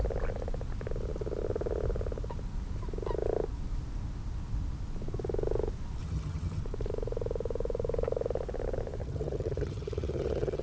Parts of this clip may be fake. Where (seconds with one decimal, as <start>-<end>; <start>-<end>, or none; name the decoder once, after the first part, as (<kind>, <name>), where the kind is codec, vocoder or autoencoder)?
6.0-6.6 (vocoder, HiFi-GAN); 9.0-10.6